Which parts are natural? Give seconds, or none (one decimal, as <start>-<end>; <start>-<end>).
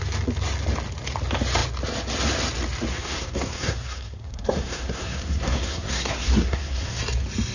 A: 0.0-2.9; 7.0-7.5